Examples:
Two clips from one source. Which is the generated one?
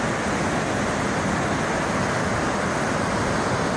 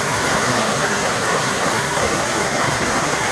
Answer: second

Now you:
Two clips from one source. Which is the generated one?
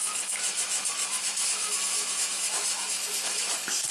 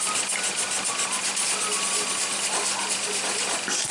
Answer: first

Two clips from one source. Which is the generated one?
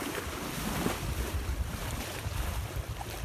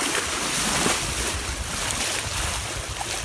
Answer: first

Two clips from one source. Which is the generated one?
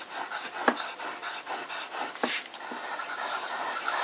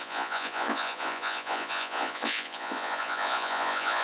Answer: second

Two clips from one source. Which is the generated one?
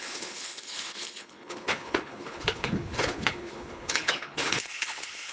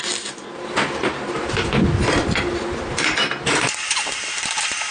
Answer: first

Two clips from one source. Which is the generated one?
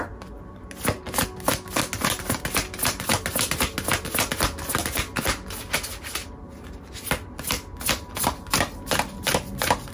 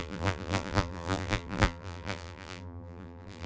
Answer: second